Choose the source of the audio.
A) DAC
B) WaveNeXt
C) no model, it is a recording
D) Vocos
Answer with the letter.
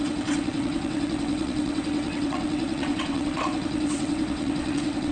B